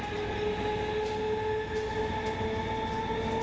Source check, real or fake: real